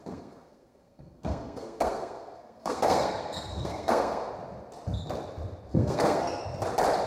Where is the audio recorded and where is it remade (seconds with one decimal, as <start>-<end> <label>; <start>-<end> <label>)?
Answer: 0.0-4.3 remade; 4.3-5.7 recorded; 5.7-6.4 remade; 6.4-7.1 recorded